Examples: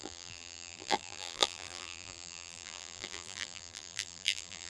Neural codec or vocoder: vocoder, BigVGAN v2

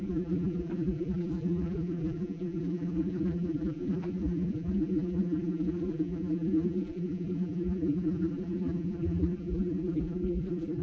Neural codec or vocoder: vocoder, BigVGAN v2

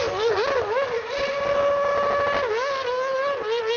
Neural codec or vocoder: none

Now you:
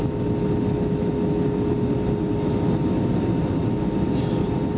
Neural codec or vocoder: none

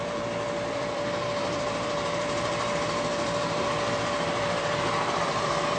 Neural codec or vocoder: vocoder, BigVGAN v2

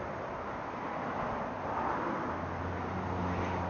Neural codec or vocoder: none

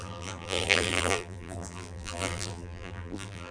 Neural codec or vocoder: vocoder, BigVGAN v2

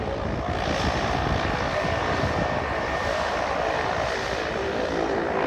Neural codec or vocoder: vocoder, BigVGAN v2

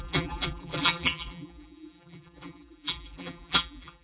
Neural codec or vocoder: vocoder, BigVGAN v2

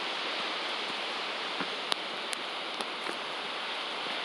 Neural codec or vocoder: none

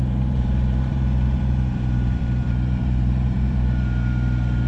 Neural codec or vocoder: vocoder, BigVGAN v2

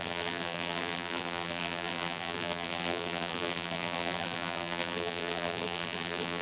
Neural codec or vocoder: vocoder, BigVGAN v2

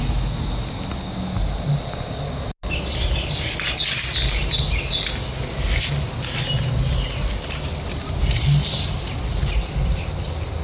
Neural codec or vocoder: none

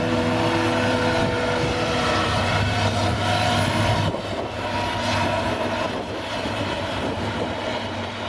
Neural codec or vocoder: vocoder, BigVGAN v2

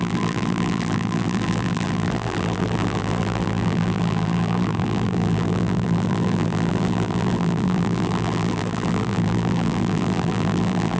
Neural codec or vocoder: vocoder, BigVGAN v2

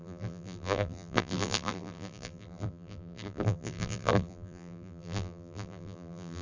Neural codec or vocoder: vocoder, BigVGAN v2